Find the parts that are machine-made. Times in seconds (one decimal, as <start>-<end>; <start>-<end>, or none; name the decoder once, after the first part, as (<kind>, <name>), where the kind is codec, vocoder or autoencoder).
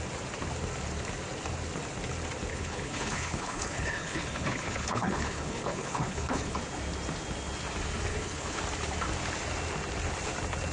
2.5-6.6 (codec, HILCodec); 8.1-8.6